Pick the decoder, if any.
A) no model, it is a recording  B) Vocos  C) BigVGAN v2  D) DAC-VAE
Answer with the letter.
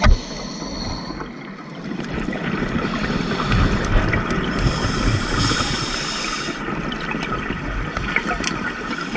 A